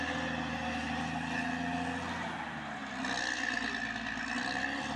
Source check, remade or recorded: recorded